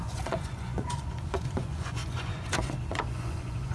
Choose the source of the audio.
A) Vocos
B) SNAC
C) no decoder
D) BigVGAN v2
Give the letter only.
A